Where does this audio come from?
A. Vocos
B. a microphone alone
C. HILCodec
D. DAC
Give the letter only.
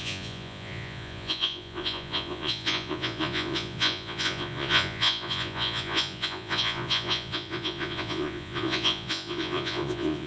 A